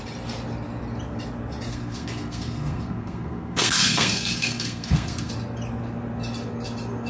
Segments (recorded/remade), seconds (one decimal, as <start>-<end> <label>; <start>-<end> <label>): 0.0-1.7 recorded; 1.7-5.3 remade; 5.3-7.1 recorded